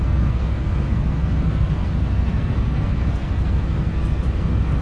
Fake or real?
fake